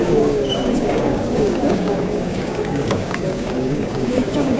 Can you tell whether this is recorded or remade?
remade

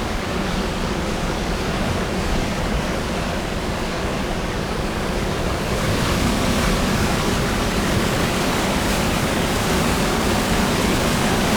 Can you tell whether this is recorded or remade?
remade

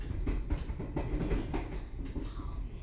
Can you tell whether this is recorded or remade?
recorded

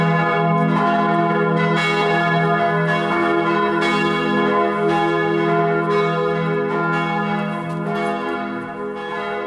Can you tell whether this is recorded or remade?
recorded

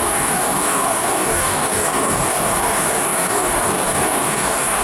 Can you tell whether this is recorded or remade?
remade